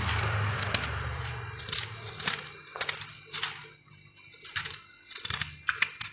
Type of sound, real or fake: fake